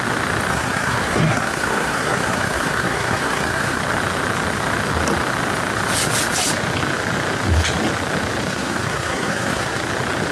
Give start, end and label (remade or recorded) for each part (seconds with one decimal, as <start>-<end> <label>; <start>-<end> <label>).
0.0-0.5 recorded; 0.5-3.8 remade; 3.8-8.5 recorded; 8.5-9.8 remade; 9.8-10.3 recorded

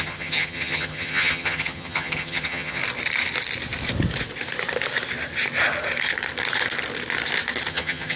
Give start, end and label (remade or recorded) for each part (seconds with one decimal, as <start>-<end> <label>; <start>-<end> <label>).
0.0-2.8 remade; 2.8-7.7 recorded; 7.7-8.2 remade

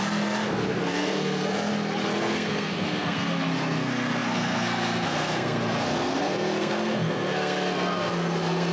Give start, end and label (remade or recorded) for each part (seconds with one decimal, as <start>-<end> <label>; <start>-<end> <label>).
0.0-1.7 remade; 1.7-2.2 recorded; 2.2-8.7 remade